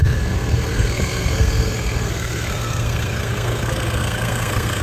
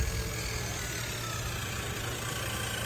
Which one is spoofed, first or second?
first